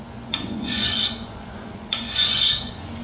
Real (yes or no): no